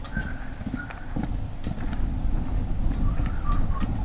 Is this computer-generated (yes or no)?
no